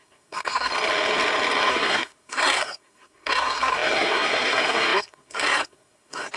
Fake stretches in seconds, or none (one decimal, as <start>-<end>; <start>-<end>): 0.0-0.7; 1.7-6.4